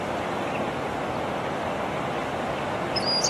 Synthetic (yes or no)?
no